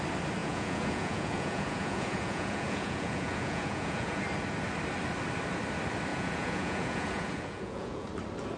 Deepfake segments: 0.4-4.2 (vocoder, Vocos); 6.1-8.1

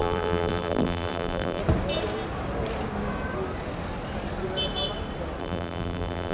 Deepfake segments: 0.0-1.6 (vocoder, BigVGAN v2); 5.4-6.3

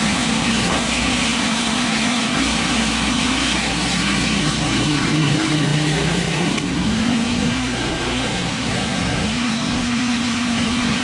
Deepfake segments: 0.0-11.0 (codec, SNAC)

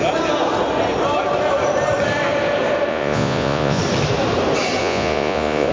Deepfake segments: 2.9-3.8 (vocoder, Vocos); 4.8-5.7

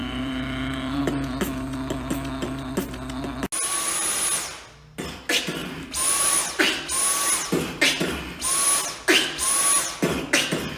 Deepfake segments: 0.0-1.0 (vocoder, BigVGAN v2); 5.6-6.6

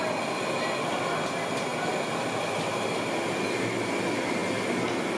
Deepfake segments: none